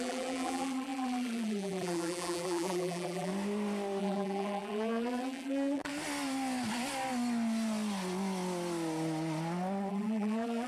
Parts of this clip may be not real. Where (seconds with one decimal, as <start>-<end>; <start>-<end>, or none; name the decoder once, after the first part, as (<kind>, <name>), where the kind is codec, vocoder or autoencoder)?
0.0-3.3 (vocoder, BigVGAN v2); 4.0-5.9; 9.9-10.7